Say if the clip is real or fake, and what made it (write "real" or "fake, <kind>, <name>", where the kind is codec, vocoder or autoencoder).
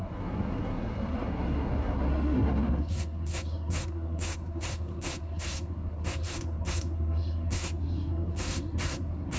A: fake, codec, SNAC